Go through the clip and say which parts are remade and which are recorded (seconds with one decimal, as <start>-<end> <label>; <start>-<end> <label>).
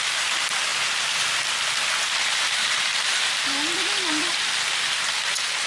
0.0-5.7 recorded